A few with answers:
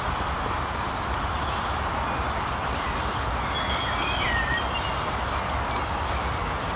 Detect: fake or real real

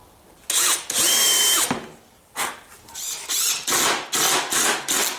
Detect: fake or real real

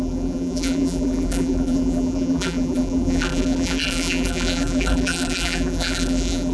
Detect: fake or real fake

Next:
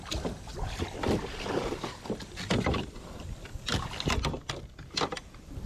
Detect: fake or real fake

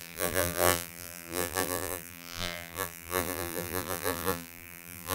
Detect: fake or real fake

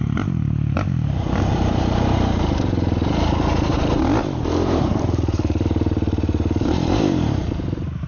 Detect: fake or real fake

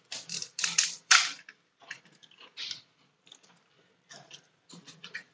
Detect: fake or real fake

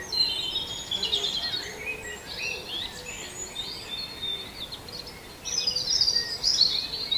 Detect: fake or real real